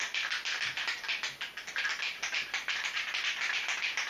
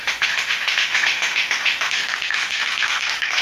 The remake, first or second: second